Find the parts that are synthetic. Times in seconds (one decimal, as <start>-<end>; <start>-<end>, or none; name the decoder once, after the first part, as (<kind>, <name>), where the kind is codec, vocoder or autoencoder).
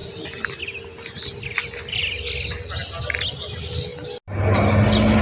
none